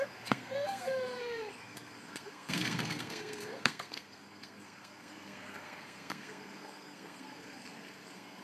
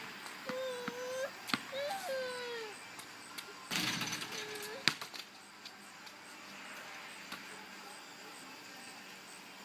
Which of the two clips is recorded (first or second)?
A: second